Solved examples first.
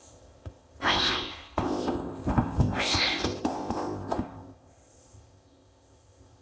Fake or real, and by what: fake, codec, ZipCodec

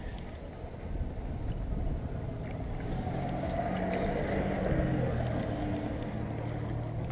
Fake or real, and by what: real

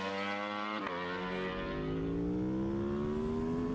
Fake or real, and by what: real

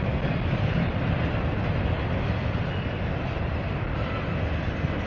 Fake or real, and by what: real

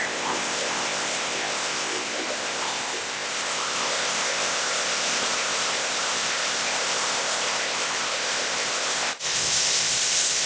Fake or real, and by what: fake, codec, ZipCodec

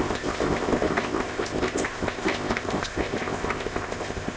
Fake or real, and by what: fake, codec, ZipCodec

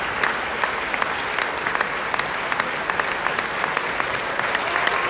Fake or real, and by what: real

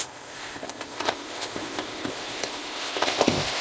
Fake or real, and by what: fake, codec, ZipCodec